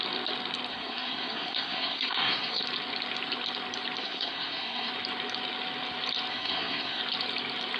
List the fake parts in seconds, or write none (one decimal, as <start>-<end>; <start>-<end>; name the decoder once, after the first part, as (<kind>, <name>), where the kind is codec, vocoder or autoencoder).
0.7-2.6 (codec, SNAC); 4.0-4.9; 6.3-7.0

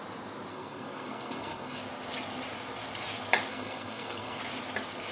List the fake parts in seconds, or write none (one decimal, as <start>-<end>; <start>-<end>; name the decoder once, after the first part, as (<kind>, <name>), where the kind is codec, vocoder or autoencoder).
0.5-1.8 (codec, SNAC); 3.5-4.4

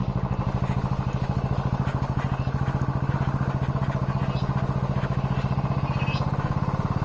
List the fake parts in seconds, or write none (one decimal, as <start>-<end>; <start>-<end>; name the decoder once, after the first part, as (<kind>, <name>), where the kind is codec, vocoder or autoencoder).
none

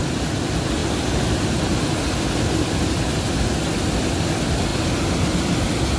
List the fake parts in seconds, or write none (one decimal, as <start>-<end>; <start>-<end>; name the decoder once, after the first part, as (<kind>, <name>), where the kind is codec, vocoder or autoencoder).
none

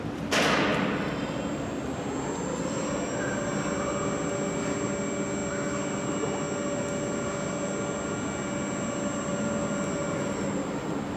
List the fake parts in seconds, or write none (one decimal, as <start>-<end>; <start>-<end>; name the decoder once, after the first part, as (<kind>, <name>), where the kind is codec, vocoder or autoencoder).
none